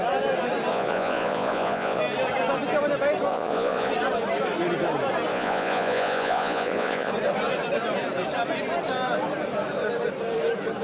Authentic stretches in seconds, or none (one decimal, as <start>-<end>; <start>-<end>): 0.0-0.7; 2.0-3.3; 3.9-5.3; 7.1-10.8